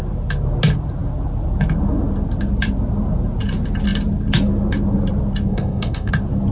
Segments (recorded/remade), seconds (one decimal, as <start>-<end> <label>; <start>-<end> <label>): 0.0-5.5 recorded; 5.5-6.1 remade; 6.1-6.5 recorded